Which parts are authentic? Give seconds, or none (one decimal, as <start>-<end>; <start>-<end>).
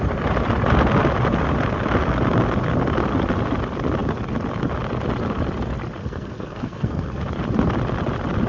0.0-6.0; 7.2-8.5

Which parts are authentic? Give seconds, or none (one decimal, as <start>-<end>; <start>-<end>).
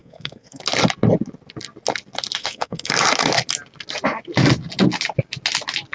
0.6-2.4; 2.9-5.9